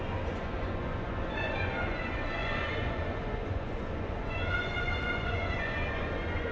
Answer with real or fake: fake